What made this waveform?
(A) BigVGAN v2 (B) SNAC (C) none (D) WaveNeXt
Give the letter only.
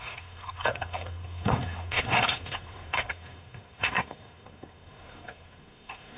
B